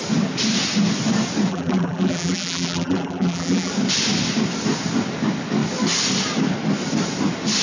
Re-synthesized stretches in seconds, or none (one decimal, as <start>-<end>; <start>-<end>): 1.5-3.7